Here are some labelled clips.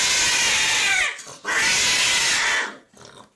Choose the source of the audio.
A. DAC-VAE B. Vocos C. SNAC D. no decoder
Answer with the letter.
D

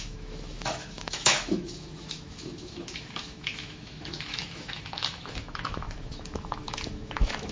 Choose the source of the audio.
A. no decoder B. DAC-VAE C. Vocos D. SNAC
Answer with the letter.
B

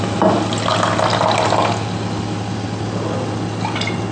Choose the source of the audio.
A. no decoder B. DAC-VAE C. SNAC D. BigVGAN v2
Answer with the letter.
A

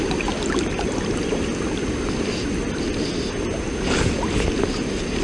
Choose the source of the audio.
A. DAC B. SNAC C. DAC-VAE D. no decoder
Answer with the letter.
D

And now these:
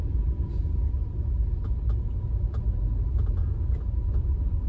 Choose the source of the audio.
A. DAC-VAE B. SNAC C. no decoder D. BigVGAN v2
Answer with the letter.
C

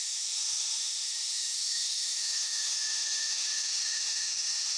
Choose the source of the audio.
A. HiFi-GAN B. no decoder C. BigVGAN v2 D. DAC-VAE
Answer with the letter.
D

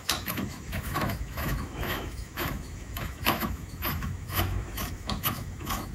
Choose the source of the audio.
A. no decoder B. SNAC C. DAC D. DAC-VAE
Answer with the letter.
D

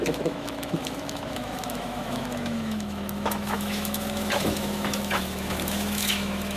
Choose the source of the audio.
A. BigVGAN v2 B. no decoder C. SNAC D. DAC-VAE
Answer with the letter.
D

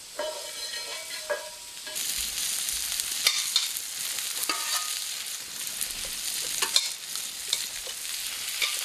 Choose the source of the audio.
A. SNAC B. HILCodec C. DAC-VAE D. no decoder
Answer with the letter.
D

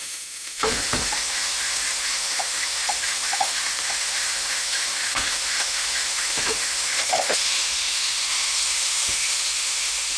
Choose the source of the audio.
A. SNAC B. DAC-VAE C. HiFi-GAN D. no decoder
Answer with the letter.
B